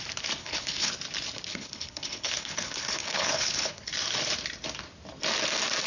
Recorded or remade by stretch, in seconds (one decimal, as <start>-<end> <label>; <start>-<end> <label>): 0.0-0.4 recorded; 0.4-0.9 remade; 0.9-1.5 recorded; 1.5-3.9 remade; 3.9-5.9 recorded